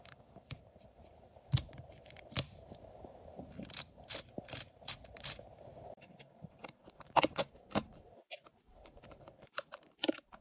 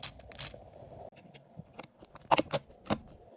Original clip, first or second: second